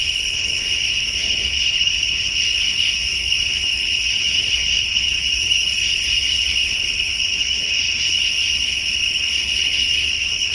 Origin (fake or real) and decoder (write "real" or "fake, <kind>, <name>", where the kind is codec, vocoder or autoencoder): fake, codec, HILCodec